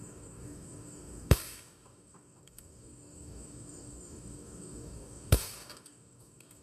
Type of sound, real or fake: fake